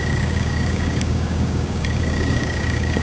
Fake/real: fake